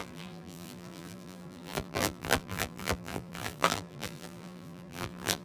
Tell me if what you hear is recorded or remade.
remade